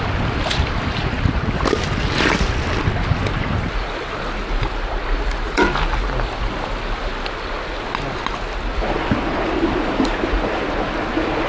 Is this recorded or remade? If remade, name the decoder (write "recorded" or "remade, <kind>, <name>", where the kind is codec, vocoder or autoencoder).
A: recorded